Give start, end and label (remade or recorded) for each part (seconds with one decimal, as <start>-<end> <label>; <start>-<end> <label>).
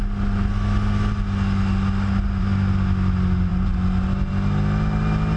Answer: 0.0-5.4 recorded